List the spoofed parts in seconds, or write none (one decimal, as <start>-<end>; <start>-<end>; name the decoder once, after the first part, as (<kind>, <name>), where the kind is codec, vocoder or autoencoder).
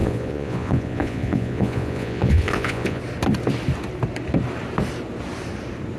0.0-3.0 (vocoder, Vocos)